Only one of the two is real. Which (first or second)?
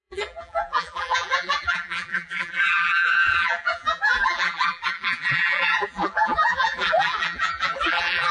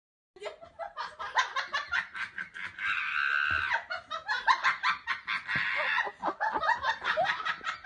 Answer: second